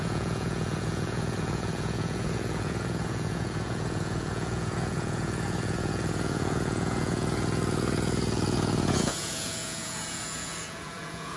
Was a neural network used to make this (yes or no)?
yes